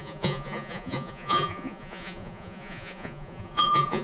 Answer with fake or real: fake